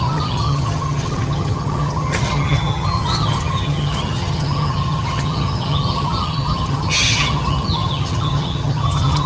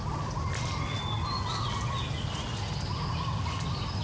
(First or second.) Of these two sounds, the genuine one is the second